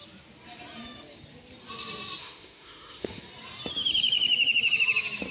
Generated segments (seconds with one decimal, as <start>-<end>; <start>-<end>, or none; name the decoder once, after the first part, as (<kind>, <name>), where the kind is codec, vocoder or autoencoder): 2.2-3.2 (autoencoder, DAC-VAE)